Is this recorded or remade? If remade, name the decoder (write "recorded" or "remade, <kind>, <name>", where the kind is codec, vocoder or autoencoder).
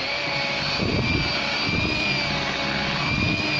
recorded